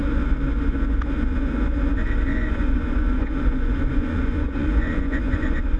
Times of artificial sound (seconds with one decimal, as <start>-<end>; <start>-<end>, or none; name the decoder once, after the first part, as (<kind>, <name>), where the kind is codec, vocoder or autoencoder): 2.3-5.8 (vocoder, Vocos)